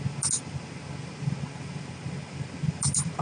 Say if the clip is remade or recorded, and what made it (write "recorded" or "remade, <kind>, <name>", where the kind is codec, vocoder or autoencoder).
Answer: recorded